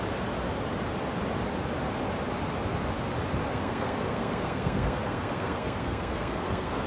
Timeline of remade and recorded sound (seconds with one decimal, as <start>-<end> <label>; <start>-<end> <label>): 0.0-3.5 recorded; 3.5-6.9 remade